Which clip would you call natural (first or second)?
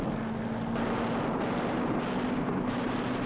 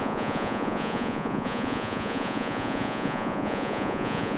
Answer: first